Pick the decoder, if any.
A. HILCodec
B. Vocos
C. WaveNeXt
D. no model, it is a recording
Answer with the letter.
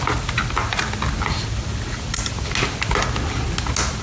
D